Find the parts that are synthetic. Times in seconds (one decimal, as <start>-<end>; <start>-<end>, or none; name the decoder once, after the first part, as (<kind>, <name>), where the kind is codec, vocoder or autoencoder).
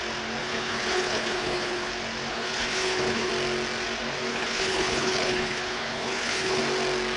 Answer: 0.4-1.9 (codec, HILCodec); 2.3-3.3; 4.3-6.6